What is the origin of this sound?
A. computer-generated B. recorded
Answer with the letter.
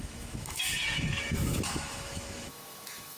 A